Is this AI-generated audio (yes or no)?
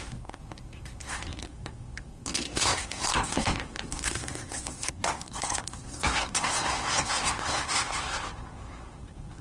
yes